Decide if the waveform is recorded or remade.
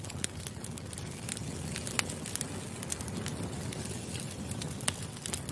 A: recorded